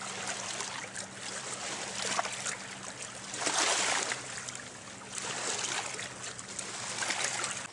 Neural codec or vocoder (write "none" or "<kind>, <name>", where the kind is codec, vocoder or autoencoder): none